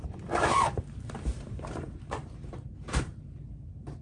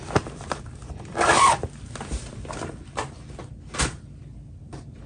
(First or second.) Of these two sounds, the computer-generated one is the first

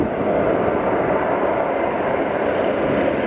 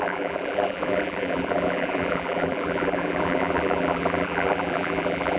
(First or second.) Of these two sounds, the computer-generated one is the second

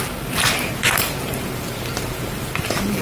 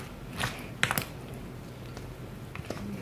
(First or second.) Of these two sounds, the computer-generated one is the first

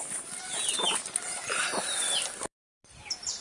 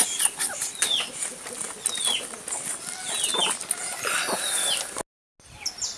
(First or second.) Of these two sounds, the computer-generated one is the first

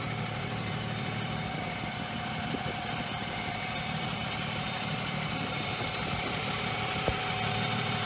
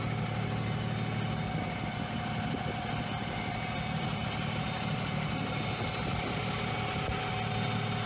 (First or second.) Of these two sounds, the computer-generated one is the first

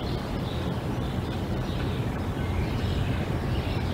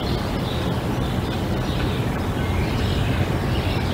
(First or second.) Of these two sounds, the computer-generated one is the first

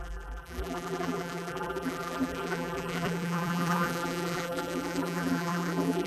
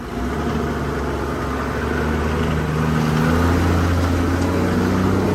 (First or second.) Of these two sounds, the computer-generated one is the first